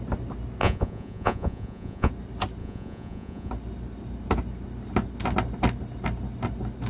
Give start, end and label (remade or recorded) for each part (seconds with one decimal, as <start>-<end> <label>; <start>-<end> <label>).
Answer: 0.0-0.6 recorded; 0.6-2.1 remade; 2.1-2.6 recorded; 2.6-3.5 remade; 3.5-6.9 recorded